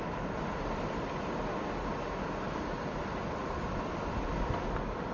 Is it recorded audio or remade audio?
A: recorded